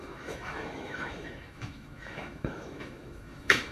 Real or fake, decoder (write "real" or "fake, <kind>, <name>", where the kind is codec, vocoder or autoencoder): fake, autoencoder, DAC-VAE